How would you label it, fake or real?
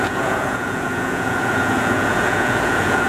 fake